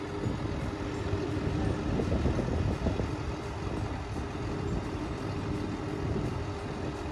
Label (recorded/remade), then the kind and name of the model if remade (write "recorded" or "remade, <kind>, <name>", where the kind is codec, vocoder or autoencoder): recorded